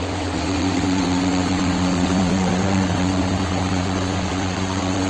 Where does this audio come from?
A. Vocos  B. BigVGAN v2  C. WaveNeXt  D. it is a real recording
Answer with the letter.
C